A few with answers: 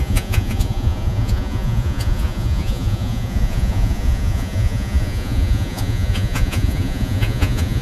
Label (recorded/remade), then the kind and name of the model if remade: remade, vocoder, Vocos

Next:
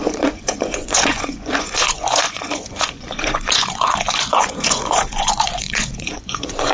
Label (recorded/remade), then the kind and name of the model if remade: remade, vocoder, Vocos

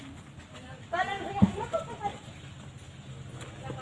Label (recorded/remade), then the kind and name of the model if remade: recorded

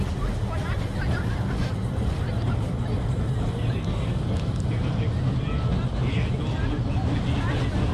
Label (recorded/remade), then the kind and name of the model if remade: recorded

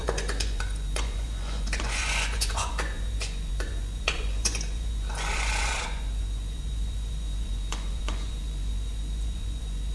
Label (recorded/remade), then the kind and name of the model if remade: remade, vocoder, Vocos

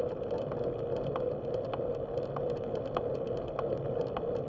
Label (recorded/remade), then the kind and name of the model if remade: recorded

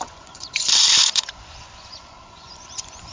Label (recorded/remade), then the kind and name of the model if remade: remade, vocoder, Vocos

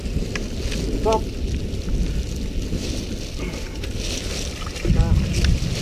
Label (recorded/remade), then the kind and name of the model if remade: recorded